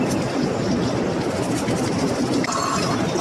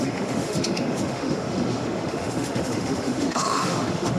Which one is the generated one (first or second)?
second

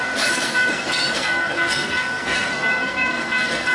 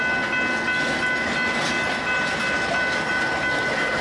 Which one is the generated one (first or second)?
first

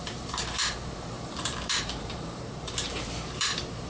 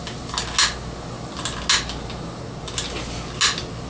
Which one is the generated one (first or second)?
first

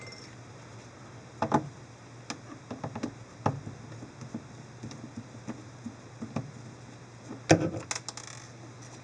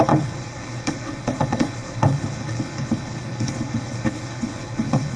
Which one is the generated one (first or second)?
second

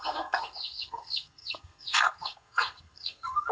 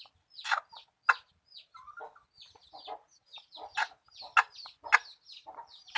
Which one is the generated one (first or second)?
first